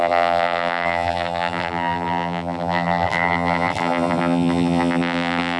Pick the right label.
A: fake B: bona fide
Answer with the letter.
A